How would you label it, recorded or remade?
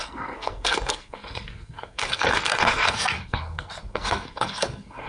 remade